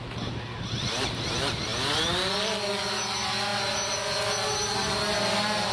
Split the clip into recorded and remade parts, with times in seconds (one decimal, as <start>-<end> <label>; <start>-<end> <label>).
0.0-5.7 recorded